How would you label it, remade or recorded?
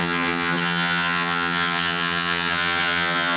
remade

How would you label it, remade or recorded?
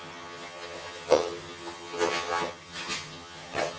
remade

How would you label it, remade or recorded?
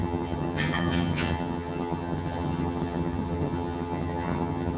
remade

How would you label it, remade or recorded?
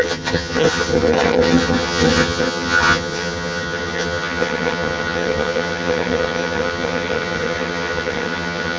remade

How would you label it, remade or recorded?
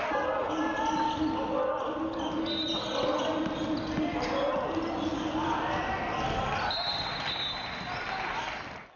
recorded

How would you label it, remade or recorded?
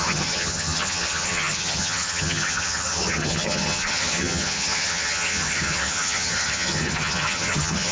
remade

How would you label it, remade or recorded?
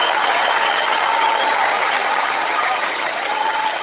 remade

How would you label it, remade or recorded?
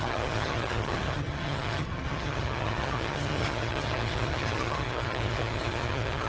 remade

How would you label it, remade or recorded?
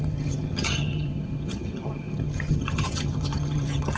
remade